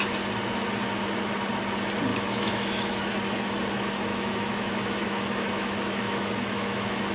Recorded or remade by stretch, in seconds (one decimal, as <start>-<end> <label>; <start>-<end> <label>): 0.0-2.1 recorded; 2.1-3.1 remade; 3.1-4.1 recorded; 4.1-7.1 remade